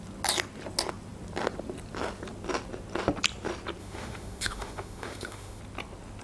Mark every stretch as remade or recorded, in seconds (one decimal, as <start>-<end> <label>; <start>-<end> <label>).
0.0-3.8 recorded; 3.8-5.6 remade; 5.6-6.2 recorded